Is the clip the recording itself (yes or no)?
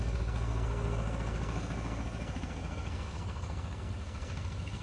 no